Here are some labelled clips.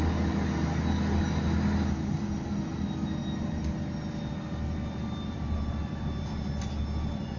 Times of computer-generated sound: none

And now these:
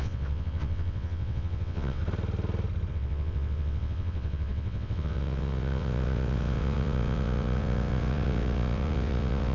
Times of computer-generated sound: 0.0-2.0 (vocoder, WaveNeXt); 2.9-9.5

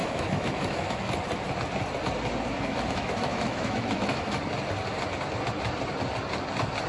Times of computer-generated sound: 0.0-1.1 (autoencoder, DAC-VAE); 2.7-4.4

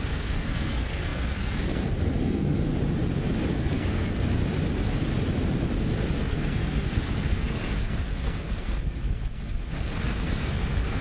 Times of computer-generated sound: 0.0-2.7 (codec, SNAC); 3.5-4.4; 6.2-11.0

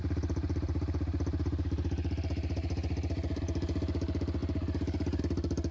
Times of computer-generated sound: 0.0-3.4 (vocoder, BigVGAN v2); 4.4-5.2

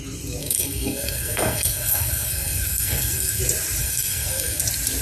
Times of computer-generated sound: 0.4-3.4 (codec, SNAC); 3.8-4.6

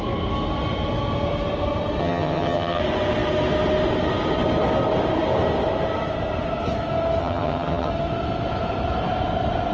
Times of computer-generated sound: 2.0-2.8 (vocoder, HiFi-GAN); 7.2-7.9